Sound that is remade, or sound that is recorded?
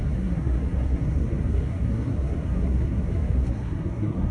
remade